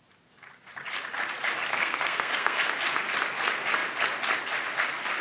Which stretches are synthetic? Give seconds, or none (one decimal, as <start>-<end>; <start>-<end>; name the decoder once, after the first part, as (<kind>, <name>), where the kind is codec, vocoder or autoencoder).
1.7-2.6 (codec, SNAC)